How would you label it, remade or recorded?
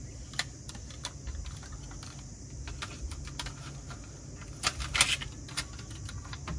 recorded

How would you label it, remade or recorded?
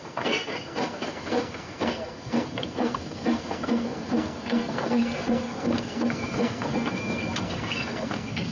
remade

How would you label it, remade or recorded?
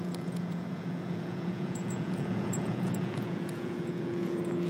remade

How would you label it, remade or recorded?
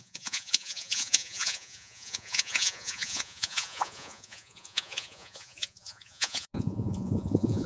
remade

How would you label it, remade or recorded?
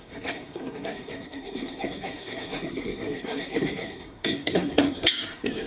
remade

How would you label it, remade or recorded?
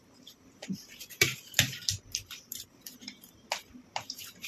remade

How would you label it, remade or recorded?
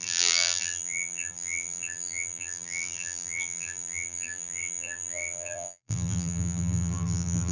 remade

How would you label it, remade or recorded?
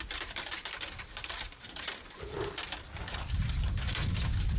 recorded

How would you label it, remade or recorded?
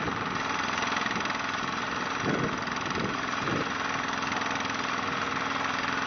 recorded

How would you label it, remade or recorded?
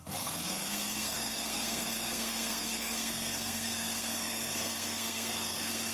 remade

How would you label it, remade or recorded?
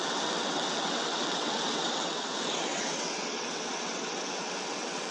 remade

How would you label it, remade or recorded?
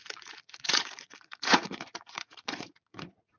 remade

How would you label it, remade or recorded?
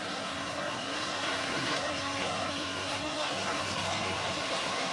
remade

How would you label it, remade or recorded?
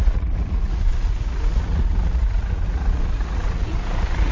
remade